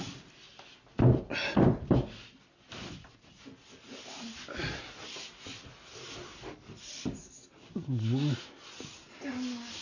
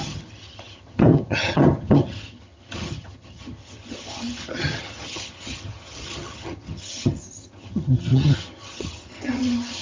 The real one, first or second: first